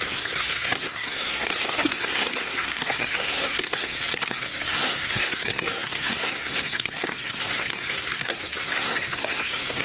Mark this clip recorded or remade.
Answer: remade